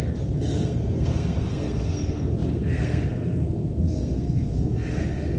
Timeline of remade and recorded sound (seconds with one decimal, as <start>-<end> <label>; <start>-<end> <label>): 0.0-5.4 remade